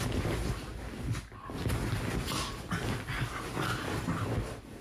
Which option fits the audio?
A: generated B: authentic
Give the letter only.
B